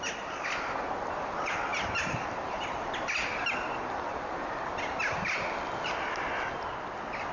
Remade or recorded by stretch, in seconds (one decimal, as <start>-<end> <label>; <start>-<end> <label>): 0.0-7.3 recorded